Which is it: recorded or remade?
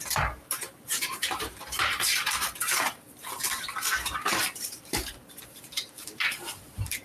remade